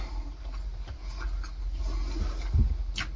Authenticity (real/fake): real